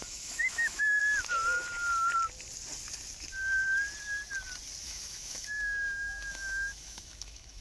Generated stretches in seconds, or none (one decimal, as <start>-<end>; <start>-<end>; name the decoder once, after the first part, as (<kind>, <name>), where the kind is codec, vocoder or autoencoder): 0.0-1.0 (autoencoder, DAC-VAE); 4.8-7.6

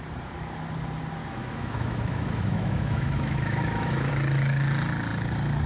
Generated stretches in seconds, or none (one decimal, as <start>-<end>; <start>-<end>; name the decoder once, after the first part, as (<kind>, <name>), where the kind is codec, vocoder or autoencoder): 1.2-4.1 (autoencoder, DAC-VAE)

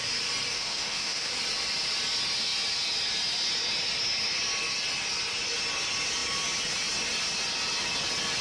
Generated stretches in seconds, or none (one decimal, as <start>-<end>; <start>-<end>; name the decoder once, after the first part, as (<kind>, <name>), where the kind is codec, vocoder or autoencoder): 0.5-1.3 (autoencoder, DAC-VAE)